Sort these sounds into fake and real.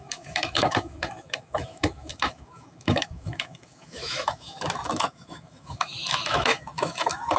fake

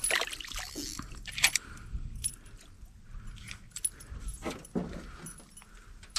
real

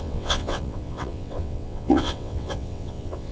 fake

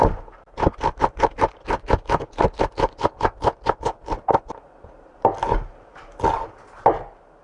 real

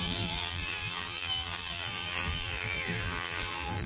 fake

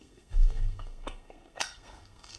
fake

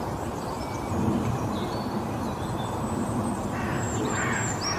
real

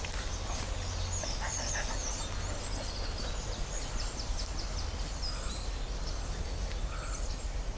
real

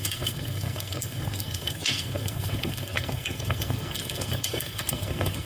fake